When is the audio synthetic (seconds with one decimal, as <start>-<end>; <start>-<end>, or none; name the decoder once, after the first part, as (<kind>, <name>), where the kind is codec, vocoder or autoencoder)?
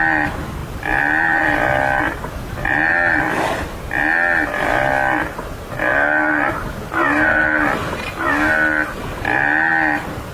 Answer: 0.6-2.0 (vocoder, BigVGAN v2)